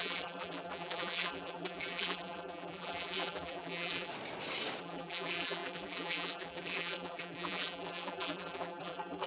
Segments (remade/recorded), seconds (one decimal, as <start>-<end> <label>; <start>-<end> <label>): 0.0-4.1 remade; 4.1-4.8 recorded; 4.8-9.3 remade